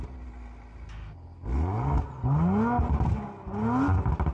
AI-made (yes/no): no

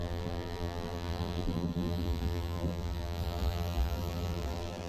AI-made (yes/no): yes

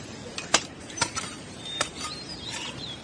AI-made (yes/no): yes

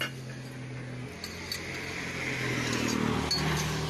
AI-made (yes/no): no